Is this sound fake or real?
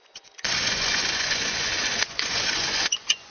fake